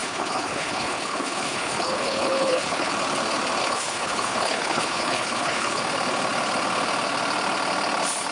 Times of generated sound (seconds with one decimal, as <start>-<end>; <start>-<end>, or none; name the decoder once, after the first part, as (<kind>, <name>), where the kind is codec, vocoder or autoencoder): 0.0-2.9 (codec, HILCodec); 3.6-5.8